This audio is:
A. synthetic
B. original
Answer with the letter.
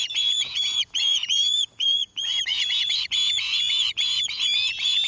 A